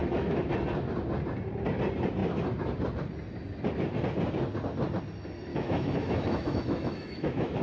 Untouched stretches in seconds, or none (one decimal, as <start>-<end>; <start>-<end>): 0.5-5.5